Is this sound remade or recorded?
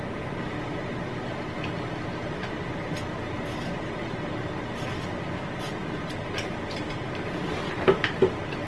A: recorded